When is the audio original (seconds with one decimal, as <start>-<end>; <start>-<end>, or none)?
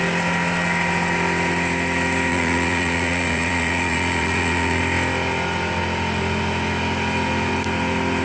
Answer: 0.0-2.3; 4.8-8.2